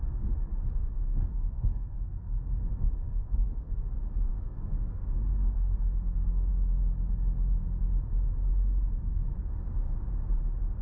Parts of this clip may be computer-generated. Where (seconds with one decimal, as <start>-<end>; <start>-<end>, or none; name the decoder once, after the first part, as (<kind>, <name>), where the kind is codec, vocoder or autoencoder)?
0.8-3.9 (codec, SNAC); 4.3-6.5; 8.5-9.4